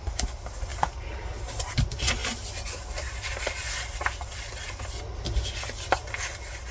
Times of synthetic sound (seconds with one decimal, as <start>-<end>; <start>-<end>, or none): none